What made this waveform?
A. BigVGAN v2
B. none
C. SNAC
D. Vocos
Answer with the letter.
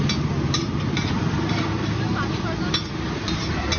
B